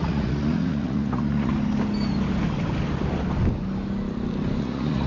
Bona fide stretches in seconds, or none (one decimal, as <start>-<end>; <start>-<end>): 1.5-4.6